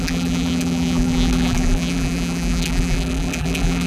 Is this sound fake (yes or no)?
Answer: yes